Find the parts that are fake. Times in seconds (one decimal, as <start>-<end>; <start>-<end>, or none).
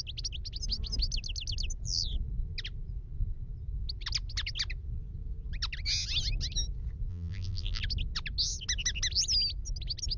7.1-7.8